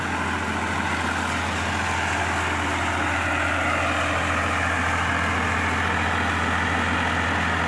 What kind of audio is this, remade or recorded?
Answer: recorded